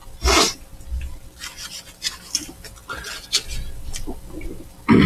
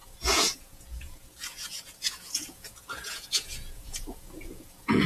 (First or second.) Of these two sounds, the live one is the first